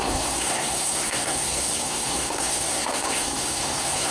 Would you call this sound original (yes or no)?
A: no